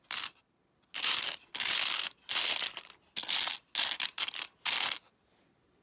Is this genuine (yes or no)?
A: yes